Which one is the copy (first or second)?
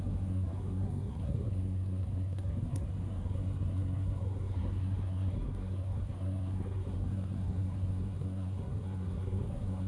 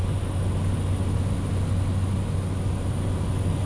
first